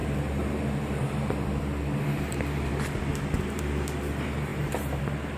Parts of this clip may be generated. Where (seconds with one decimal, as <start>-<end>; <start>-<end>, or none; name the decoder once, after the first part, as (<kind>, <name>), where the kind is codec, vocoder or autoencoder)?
0.0-0.6 (vocoder, BigVGAN v2); 4.5-5.0